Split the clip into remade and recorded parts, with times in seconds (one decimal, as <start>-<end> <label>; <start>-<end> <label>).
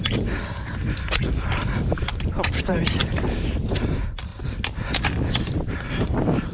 0.0-4.3 remade; 4.3-5.7 recorded; 5.7-6.5 remade